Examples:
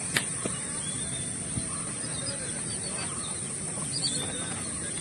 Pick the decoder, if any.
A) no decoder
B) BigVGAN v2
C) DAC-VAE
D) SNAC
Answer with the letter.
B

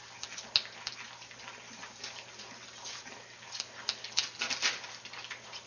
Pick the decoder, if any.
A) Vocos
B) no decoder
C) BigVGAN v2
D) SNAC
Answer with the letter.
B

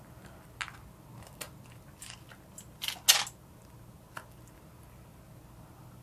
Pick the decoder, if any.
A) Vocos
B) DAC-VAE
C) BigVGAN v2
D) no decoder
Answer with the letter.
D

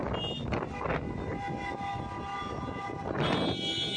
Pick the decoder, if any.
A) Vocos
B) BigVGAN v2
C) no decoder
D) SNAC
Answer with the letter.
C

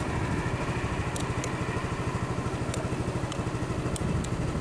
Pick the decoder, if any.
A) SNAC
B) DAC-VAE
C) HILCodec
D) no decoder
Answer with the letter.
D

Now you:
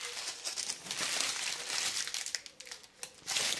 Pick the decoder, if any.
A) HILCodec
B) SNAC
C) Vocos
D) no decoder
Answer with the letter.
D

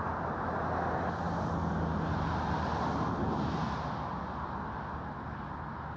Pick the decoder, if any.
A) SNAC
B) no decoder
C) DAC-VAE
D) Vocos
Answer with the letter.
B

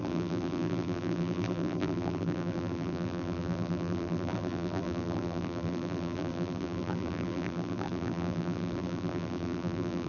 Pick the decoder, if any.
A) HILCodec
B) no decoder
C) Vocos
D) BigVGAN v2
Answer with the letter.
D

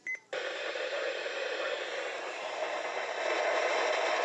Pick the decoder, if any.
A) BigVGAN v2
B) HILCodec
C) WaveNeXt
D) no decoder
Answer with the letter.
A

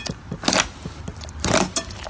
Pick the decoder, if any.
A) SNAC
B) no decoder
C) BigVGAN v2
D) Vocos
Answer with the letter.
B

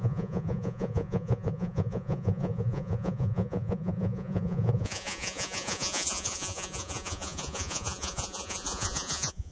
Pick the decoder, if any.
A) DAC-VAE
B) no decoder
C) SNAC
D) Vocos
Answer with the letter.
D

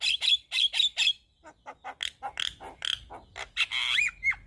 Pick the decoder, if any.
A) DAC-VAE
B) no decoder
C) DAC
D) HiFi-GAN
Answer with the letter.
B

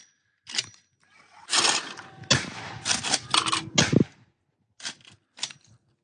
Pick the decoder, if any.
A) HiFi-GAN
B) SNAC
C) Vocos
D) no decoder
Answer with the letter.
D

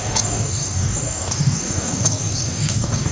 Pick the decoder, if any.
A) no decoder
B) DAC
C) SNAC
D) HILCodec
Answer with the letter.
B